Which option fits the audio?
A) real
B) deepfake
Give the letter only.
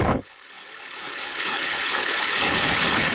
B